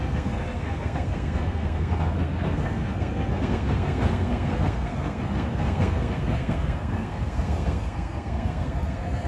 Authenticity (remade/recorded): remade